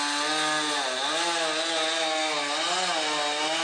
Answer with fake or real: real